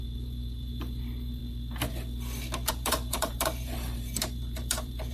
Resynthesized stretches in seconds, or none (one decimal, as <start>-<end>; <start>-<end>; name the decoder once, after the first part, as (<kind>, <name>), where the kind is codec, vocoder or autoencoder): 0.0-1.4 (vocoder, BigVGAN v2); 2.7-5.1